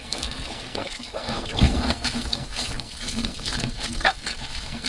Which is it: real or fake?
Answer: fake